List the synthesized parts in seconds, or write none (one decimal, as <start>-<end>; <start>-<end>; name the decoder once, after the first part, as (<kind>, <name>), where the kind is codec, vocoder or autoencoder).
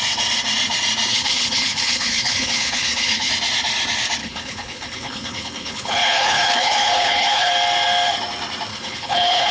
1.1-3.3 (codec, HILCodec); 4.2-7.5; 8.7-9.5